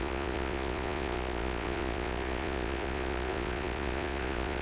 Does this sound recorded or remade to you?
remade